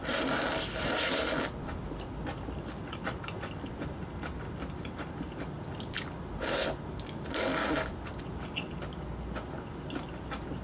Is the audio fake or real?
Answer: real